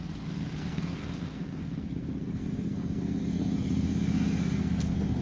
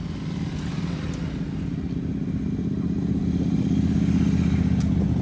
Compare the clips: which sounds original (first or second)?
second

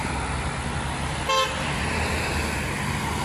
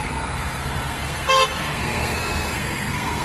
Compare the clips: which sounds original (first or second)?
first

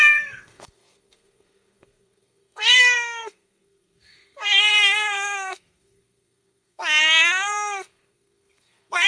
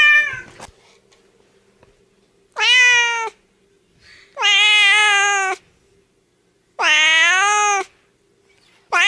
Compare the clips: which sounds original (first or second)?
second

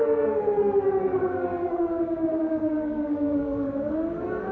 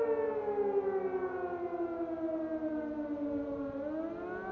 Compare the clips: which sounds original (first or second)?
second